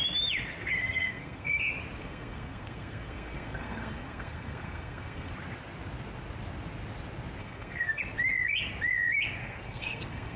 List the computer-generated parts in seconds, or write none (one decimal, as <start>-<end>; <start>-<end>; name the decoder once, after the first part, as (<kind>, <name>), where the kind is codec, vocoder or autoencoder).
0.8-1.6 (codec, SNAC); 2.0-5.3; 7.4-8.0; 9.4-10.4